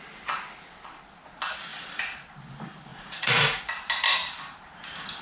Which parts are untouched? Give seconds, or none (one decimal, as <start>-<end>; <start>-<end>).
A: 0.0-2.9; 3.6-5.2